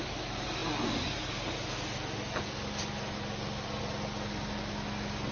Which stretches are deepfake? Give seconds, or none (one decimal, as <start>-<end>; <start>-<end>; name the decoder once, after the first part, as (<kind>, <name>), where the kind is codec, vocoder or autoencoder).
none